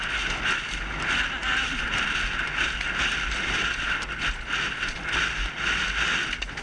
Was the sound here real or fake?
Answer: real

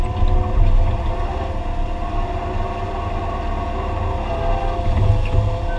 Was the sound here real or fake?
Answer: real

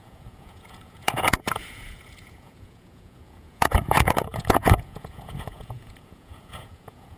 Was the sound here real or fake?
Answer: fake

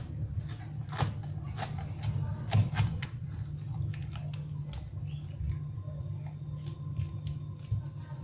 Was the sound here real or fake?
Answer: real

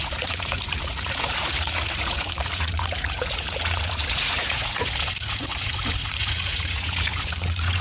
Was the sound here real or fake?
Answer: fake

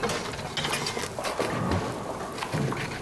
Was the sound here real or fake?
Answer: real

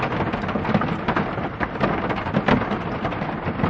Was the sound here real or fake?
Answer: real